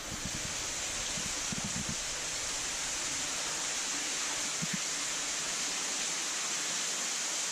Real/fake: real